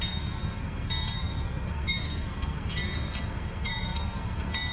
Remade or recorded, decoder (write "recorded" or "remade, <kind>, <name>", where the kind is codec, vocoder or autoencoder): remade, codec, SNAC